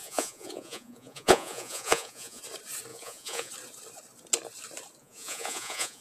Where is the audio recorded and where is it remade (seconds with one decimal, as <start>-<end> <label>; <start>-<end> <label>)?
0.0-2.4 remade; 2.4-2.9 recorded; 2.9-3.5 remade; 3.5-5.0 recorded; 5.0-6.0 remade